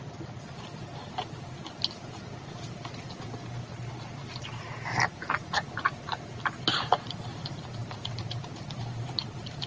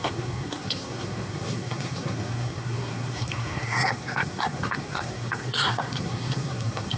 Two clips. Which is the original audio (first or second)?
first